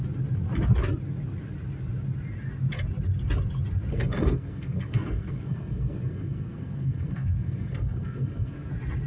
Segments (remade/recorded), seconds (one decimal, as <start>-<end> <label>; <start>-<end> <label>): 0.0-3.9 recorded; 3.9-8.7 remade; 8.7-9.1 recorded